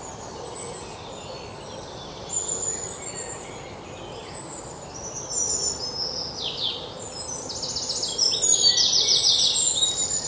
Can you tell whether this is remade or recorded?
recorded